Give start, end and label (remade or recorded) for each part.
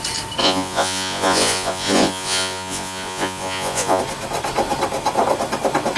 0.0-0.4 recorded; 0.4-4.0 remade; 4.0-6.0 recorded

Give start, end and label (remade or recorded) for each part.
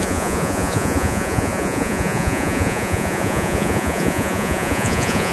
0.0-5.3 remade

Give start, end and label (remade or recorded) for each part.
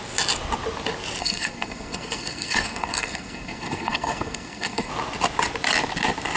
0.0-1.2 recorded; 1.2-4.9 remade; 4.9-6.4 recorded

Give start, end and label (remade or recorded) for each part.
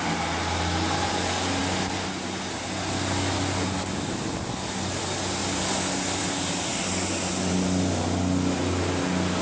0.0-9.4 recorded